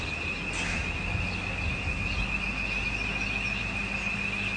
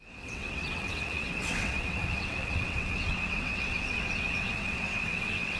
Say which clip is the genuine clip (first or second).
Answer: first